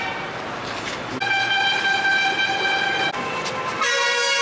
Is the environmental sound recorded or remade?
recorded